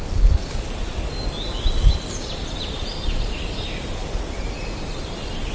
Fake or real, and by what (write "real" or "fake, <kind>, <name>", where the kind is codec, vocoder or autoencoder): real